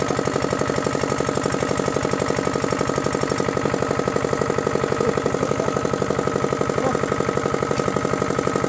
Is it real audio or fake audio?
real